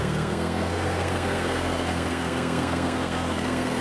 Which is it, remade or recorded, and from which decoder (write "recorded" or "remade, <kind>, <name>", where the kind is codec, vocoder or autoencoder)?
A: remade, codec, SNAC